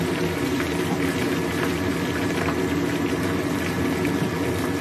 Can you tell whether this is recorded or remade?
recorded